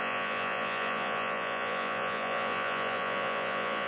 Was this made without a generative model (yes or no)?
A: no